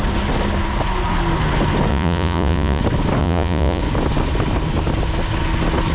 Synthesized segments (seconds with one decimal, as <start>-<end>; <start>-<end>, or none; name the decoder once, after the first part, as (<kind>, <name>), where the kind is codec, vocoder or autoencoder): 1.9-2.8 (vocoder, Vocos); 3.2-3.8